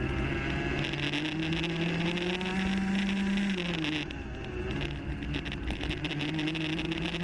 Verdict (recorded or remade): recorded